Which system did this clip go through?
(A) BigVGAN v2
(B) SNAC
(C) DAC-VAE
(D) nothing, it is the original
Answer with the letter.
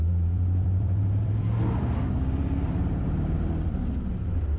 A